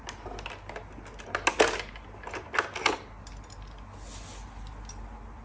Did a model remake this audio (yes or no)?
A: no